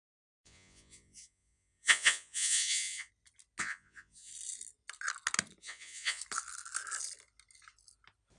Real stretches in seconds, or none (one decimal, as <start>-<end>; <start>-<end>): 3.1-3.6; 4.3-5.6; 6.2-8.4